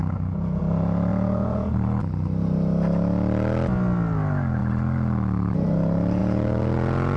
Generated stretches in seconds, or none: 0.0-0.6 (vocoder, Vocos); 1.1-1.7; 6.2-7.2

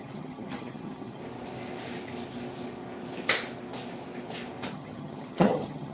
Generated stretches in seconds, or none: 0.0-1.2 (vocoder, HiFi-GAN); 4.7-5.9

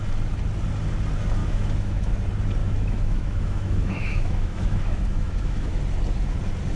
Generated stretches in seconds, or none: 1.4-2.1 (autoencoder, DAC-VAE); 2.6-5.8